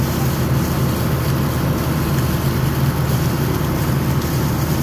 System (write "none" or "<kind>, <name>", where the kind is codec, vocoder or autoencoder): none